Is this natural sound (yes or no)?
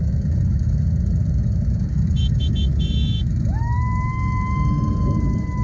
no